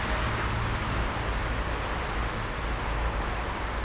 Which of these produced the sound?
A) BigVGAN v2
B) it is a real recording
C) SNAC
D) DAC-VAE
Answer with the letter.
B